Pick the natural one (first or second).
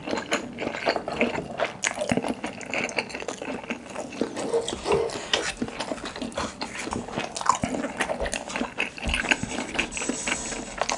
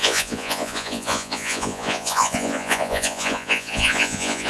first